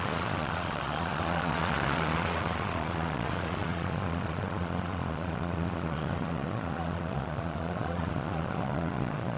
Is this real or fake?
fake